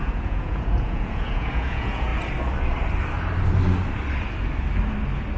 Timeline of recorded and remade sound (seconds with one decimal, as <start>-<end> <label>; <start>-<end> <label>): 0.0-2.1 remade; 2.1-5.4 recorded